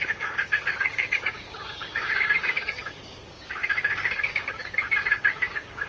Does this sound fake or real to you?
fake